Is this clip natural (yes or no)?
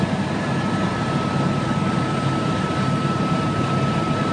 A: no